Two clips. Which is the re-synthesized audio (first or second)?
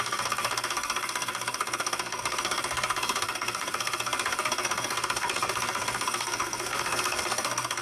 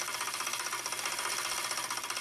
first